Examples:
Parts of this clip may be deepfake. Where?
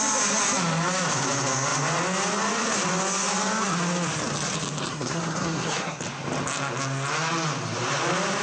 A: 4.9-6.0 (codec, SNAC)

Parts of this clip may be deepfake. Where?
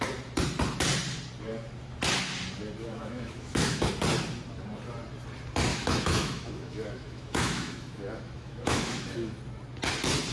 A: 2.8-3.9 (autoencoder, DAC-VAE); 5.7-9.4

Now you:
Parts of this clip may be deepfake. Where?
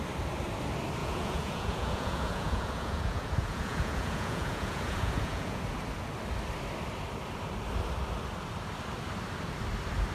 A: 1.0-5.6 (vocoder, Vocos)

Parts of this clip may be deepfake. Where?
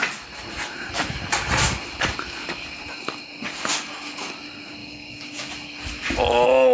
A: 4.8-5.5 (codec, DAC)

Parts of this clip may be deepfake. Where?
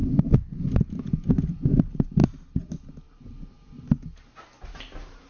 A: none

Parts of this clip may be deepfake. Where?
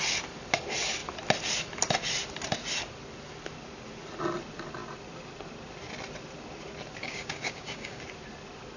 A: 7.0-8.0 (codec, DAC)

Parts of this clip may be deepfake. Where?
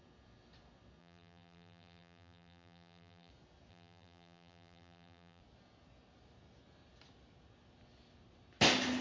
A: 1.0-3.3 (vocoder, BigVGAN v2); 3.7-5.4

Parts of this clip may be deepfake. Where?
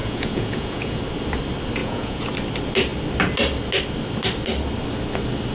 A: 0.0-1.0 (vocoder, Vocos); 1.8-2.3